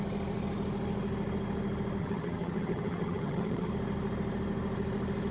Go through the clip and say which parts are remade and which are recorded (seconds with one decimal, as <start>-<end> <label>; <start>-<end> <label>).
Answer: 0.0-2.0 recorded; 2.0-3.7 remade; 3.7-5.3 recorded